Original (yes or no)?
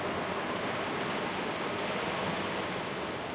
yes